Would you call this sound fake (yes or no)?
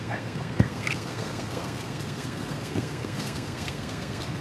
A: yes